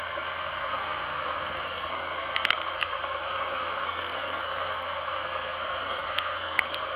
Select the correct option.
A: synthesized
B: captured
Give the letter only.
A